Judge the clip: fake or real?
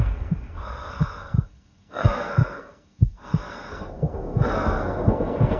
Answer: fake